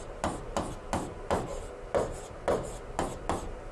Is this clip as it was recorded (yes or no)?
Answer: yes